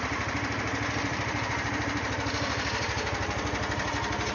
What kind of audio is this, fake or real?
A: fake